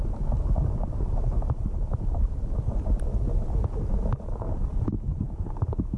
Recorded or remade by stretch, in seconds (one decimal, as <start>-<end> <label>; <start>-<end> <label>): 0.0-5.1 recorded; 5.1-6.0 remade